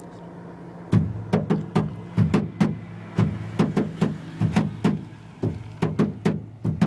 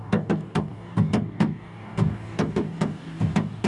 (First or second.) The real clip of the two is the first